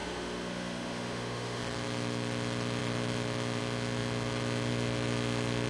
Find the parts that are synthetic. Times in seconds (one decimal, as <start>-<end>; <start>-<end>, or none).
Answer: 0.0-1.6